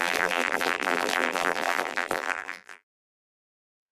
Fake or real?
fake